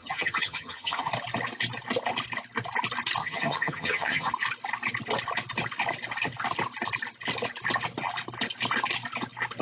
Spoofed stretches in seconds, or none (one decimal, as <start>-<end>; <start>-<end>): 0.0-1.1; 3.2-4.3